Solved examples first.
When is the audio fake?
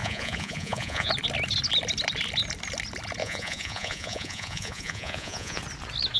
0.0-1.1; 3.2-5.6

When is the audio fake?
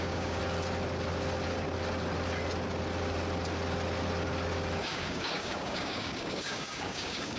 0.0-0.4; 4.8-7.4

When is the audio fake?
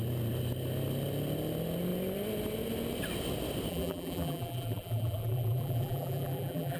3.7-6.8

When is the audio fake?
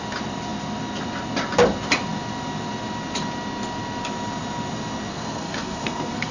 5.1-6.3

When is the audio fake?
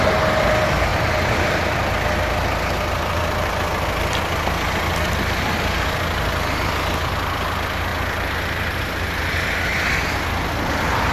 none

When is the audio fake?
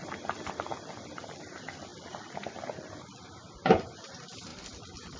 none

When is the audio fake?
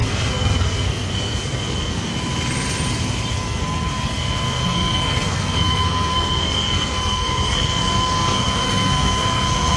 0.0-2.1; 3.3-9.8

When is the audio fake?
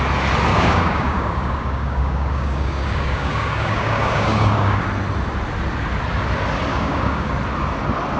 0.5-4.8; 6.7-7.3